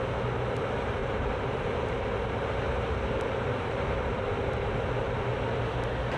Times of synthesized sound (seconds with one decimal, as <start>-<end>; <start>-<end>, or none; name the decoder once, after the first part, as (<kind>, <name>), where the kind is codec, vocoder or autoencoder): 1.0-4.7 (vocoder, BigVGAN v2)